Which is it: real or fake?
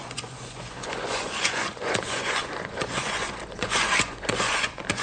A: fake